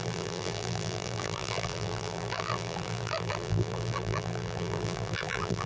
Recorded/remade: remade